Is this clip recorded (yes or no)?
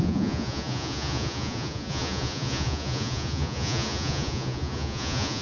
no